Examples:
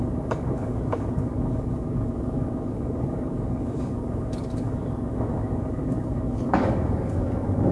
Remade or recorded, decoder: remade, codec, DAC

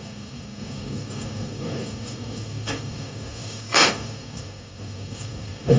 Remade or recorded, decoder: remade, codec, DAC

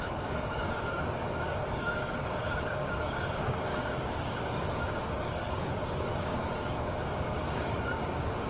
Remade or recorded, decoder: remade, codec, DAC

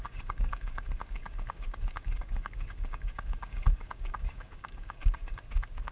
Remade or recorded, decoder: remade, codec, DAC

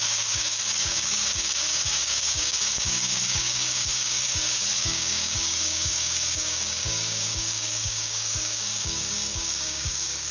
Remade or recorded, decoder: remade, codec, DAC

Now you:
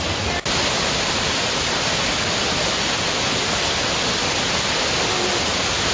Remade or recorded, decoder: recorded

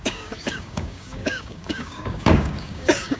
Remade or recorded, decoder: remade, codec, DAC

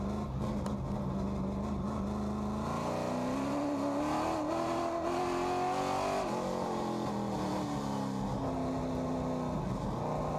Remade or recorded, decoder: recorded